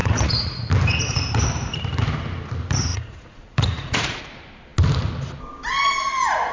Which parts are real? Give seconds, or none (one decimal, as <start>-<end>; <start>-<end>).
0.6-2.9; 4.2-6.5

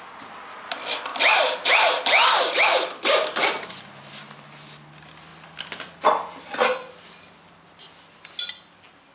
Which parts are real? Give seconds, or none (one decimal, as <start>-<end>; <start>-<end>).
0.0-9.1

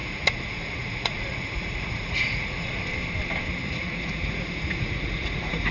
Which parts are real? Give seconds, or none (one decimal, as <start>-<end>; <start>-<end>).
2.8-3.6